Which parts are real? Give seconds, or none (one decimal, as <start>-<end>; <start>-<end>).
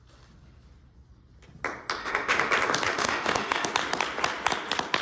0.0-2.0; 2.5-2.9; 3.7-5.0